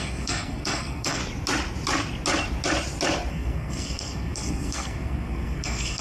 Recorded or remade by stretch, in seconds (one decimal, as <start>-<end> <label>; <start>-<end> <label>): 0.0-1.2 remade; 1.2-3.3 recorded; 3.3-6.0 remade